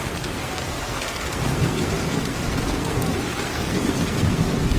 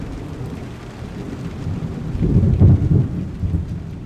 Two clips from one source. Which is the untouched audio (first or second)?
second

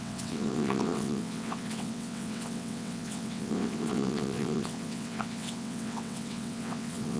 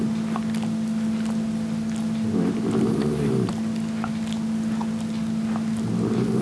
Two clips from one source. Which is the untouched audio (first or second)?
second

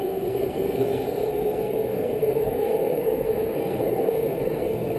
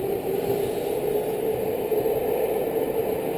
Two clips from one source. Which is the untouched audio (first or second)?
second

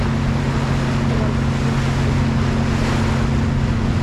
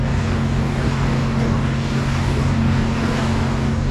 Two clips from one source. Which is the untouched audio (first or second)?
first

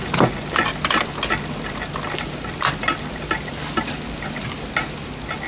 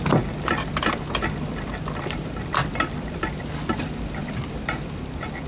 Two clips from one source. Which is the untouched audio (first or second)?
first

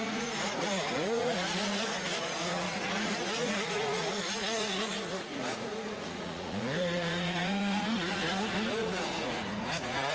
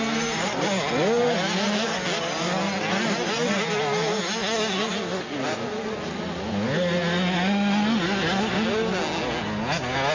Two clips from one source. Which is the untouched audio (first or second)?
second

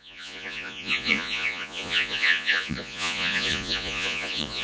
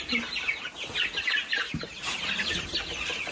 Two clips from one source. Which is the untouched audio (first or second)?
second